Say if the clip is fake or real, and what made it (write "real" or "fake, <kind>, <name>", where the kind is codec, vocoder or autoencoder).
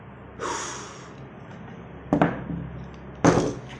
real